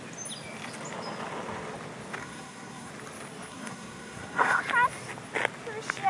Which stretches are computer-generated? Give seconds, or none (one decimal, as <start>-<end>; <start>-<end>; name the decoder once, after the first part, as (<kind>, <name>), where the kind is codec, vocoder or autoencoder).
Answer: 2.2-2.9 (codec, SNAC); 3.5-4.6